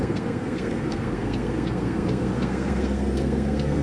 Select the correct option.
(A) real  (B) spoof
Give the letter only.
B